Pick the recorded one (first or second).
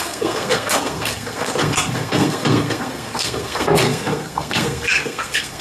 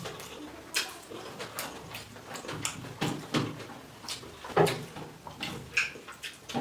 second